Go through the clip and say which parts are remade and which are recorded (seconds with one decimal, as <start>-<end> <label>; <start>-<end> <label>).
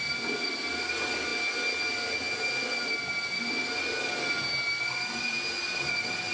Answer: 0.0-6.3 recorded